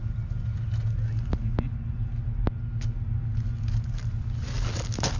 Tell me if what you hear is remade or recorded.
recorded